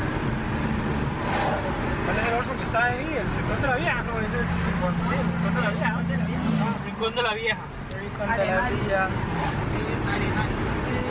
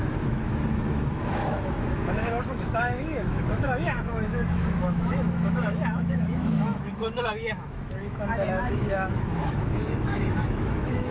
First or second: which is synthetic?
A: second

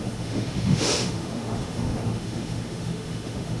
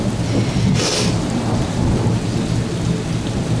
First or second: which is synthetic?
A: first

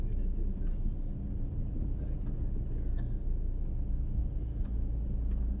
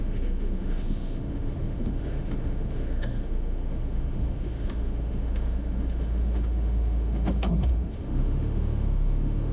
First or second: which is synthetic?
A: second